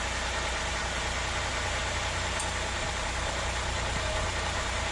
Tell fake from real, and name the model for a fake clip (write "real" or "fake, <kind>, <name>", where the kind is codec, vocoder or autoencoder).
real